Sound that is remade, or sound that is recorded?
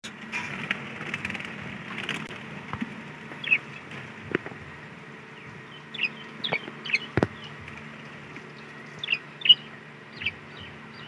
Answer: recorded